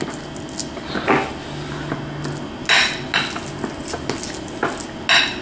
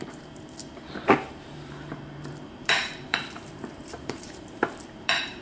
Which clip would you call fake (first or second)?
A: second